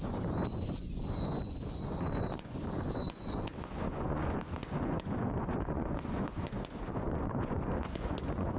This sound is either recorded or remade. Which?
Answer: remade